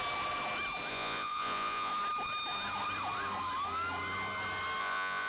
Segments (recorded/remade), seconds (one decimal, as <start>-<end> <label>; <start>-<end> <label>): 0.0-0.9 recorded; 0.9-1.9 remade; 1.9-4.8 recorded; 4.8-5.3 remade